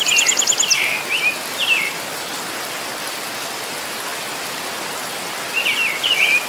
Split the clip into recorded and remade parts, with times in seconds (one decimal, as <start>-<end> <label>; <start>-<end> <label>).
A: 0.0-6.5 recorded